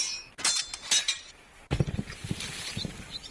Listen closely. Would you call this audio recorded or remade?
recorded